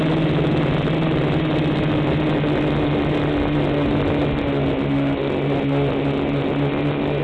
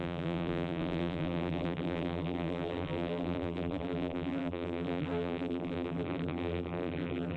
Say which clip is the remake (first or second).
second